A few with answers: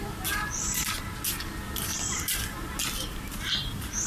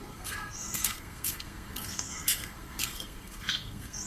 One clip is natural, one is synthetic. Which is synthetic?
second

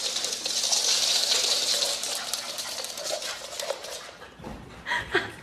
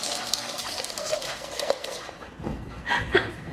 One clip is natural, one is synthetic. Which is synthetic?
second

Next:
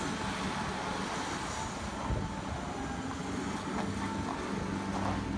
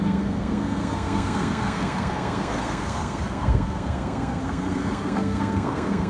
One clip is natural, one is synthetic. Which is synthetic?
second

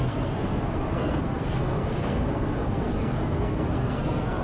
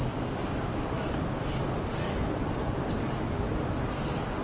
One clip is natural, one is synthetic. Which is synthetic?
first